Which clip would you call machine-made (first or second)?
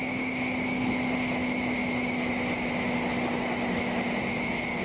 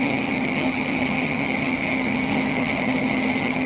second